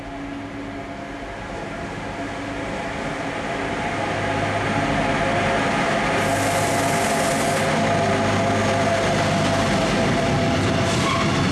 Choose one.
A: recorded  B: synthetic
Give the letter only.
A